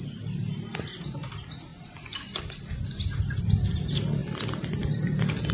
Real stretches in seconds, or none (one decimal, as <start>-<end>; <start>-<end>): 0.0-5.5